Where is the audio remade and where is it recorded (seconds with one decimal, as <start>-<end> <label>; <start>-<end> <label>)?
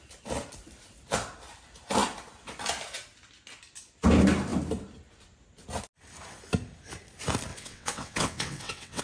0.0-7.5 recorded; 7.5-9.0 remade